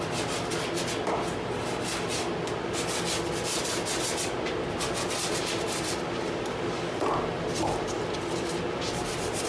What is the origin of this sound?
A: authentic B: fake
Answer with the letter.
A